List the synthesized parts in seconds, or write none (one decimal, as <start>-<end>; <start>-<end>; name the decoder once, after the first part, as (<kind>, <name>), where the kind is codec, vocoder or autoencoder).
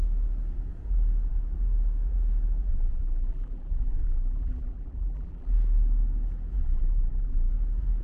2.7-5.5 (vocoder, BigVGAN v2); 6.6-7.5